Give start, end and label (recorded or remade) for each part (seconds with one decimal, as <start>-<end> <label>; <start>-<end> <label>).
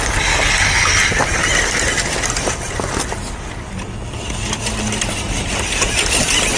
0.0-6.6 recorded